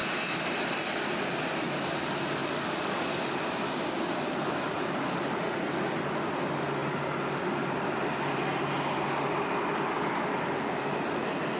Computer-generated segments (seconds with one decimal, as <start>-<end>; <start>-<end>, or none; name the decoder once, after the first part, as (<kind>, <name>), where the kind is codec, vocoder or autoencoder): none